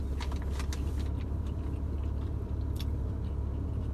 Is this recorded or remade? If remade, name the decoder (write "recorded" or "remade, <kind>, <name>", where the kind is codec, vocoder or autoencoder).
recorded